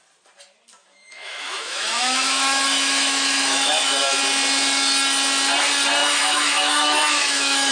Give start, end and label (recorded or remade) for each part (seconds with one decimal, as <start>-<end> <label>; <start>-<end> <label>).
0.0-0.8 recorded; 0.8-4.2 remade; 4.2-6.0 recorded; 6.0-7.7 remade